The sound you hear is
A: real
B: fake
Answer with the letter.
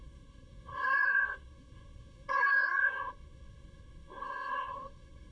B